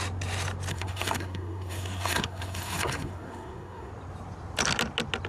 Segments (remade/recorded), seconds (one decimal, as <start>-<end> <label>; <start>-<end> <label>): 0.0-0.7 recorded; 0.7-3.9 remade; 3.9-5.3 recorded